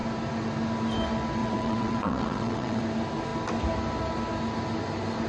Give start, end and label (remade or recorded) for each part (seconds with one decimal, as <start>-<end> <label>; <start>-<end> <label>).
0.0-1.4 recorded; 1.4-2.8 remade; 2.8-5.3 recorded